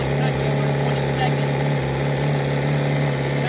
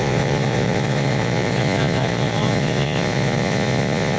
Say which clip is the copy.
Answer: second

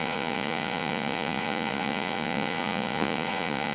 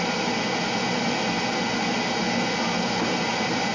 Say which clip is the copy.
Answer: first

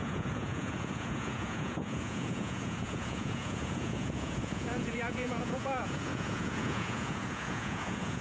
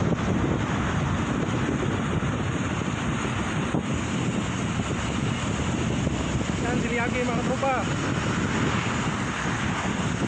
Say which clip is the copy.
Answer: first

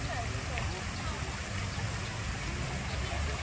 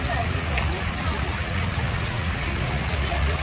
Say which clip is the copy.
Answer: second